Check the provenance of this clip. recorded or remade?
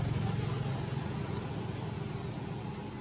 recorded